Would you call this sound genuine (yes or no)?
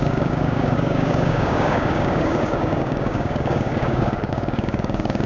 no